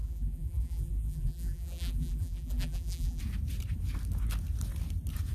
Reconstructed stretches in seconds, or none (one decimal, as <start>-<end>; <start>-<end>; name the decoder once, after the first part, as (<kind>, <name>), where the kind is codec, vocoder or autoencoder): 0.0-3.2 (vocoder, BigVGAN v2)